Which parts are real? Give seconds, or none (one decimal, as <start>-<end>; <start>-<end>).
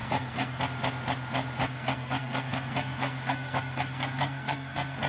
0.6-1.6